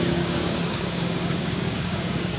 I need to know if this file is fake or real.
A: fake